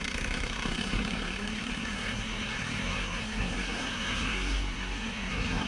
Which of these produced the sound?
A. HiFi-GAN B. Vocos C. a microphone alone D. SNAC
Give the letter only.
D